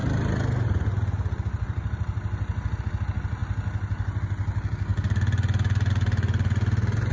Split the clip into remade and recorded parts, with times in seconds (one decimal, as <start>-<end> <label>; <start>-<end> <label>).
0.0-7.1 recorded